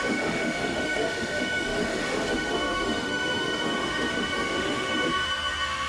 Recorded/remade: remade